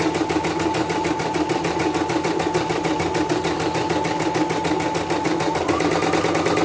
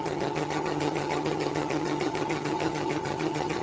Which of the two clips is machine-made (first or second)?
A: second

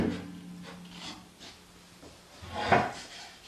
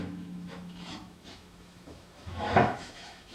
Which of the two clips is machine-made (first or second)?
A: second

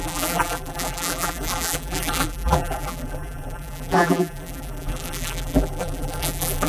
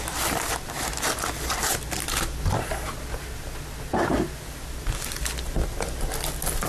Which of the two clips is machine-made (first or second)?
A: first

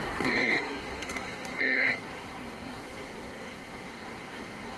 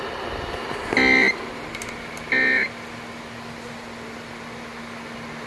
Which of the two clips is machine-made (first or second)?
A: first